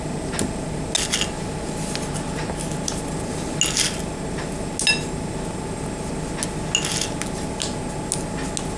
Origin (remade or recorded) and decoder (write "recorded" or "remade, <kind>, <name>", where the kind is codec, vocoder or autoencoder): recorded